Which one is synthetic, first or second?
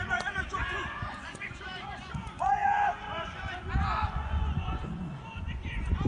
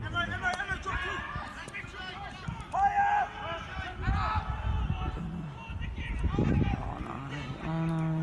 first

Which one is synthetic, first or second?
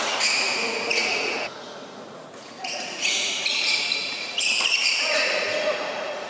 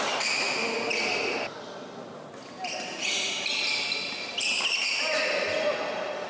first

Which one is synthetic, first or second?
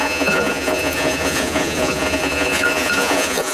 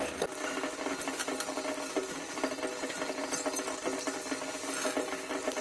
first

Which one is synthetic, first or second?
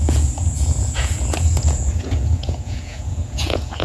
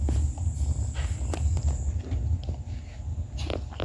first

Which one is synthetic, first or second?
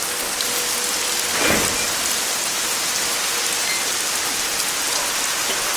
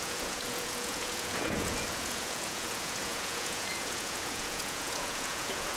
second